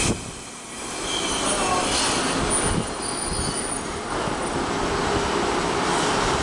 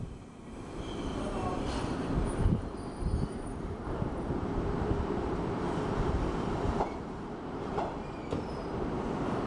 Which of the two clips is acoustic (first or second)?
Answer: first